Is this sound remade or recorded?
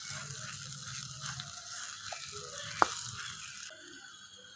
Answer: recorded